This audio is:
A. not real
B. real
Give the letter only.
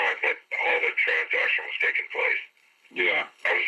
A